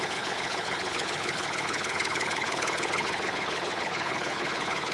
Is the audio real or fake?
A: fake